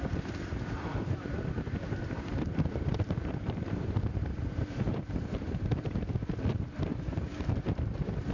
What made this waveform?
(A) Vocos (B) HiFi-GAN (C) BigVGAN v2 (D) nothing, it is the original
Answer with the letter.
C